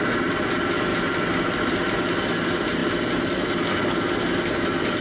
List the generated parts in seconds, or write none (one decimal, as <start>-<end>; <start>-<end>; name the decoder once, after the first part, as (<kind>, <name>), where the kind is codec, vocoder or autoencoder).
none

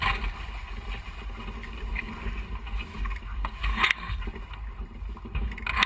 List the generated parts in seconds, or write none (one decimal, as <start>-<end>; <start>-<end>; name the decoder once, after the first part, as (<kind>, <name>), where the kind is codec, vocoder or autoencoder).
3.7-4.2 (codec, SNAC)

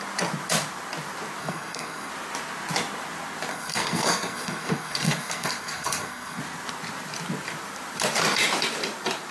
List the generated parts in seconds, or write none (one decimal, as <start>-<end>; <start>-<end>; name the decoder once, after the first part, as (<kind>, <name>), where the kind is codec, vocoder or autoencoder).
1.4-2.1 (codec, SNAC); 3.5-6.4

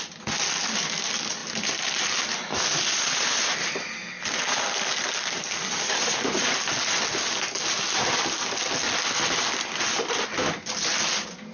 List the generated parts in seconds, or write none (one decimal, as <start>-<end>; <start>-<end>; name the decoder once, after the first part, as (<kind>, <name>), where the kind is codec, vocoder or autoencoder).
none

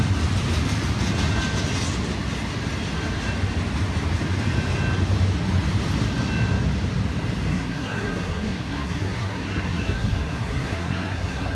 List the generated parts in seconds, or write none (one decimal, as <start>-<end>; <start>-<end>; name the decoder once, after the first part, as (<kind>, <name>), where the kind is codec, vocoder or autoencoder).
7.5-11.6 (codec, SNAC)

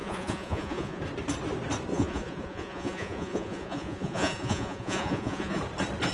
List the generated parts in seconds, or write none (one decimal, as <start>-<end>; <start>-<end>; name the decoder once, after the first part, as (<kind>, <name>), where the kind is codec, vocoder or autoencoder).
0.0-1.0 (vocoder, Vocos); 1.9-5.6